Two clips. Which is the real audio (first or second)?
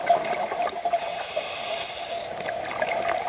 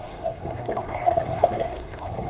first